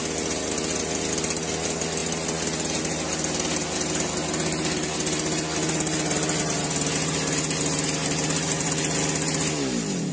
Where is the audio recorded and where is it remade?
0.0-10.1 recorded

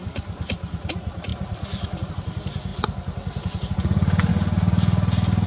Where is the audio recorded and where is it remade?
0.0-1.3 recorded; 1.3-2.1 remade; 2.1-5.5 recorded

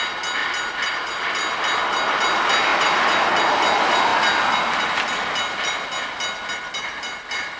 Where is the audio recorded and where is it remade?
0.0-2.7 recorded; 2.7-3.4 remade; 3.4-7.6 recorded

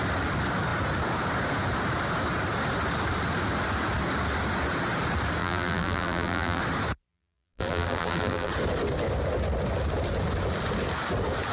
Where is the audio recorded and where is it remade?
0.0-5.4 recorded; 5.4-6.6 remade; 6.6-7.1 recorded; 7.1-8.5 remade; 8.5-11.5 recorded

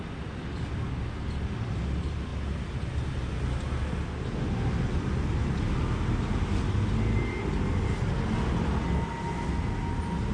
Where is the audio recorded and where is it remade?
0.0-10.3 recorded